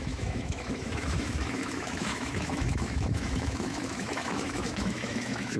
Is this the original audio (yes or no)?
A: no